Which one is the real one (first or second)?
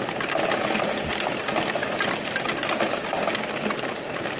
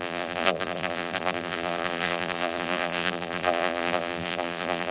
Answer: first